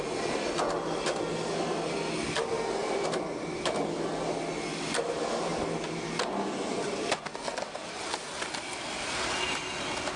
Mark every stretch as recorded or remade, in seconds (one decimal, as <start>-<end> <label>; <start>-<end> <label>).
0.0-10.2 recorded

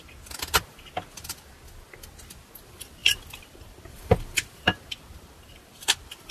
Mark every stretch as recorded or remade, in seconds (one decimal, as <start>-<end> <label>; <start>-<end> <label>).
0.0-3.0 recorded; 3.0-6.3 remade

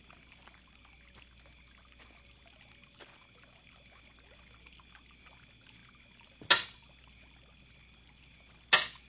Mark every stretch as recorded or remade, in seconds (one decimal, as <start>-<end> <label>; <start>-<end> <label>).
0.0-9.1 recorded

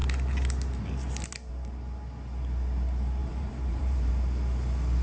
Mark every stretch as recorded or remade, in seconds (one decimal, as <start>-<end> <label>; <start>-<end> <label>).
0.0-3.2 recorded; 3.2-4.1 remade; 4.1-5.0 recorded

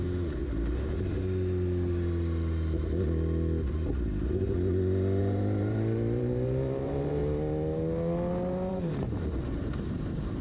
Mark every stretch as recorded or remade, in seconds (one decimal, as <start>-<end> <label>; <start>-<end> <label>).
0.0-0.4 remade; 0.4-5.2 recorded; 5.2-7.2 remade; 7.2-8.7 recorded; 8.7-10.4 remade

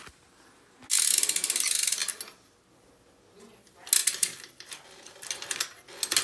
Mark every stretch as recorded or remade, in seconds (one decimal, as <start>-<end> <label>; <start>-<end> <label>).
0.0-4.0 recorded; 4.0-5.3 remade; 5.3-6.2 recorded

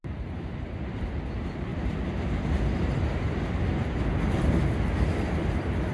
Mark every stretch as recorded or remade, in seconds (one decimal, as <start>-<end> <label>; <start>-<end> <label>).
0.0-1.7 remade; 1.7-5.2 recorded; 5.2-5.9 remade

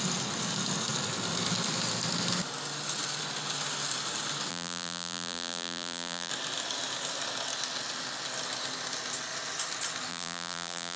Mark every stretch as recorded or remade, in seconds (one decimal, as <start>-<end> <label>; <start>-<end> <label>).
0.0-4.5 recorded; 4.5-6.3 remade; 6.3-10.1 recorded; 10.1-11.0 remade